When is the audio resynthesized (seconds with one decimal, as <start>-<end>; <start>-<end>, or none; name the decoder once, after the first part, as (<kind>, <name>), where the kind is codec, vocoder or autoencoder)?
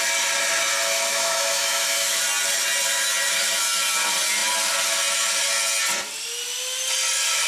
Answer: 1.1-2.2 (autoencoder, DAC-VAE)